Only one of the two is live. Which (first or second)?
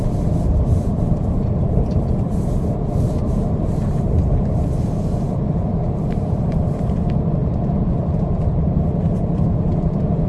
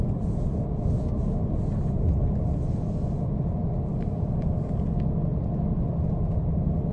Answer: second